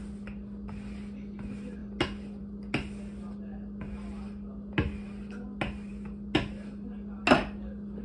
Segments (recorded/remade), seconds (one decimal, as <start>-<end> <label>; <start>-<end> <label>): 0.0-8.0 recorded